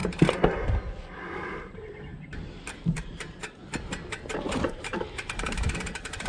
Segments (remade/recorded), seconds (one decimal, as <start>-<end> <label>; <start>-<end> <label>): 0.0-1.5 recorded; 1.5-6.3 remade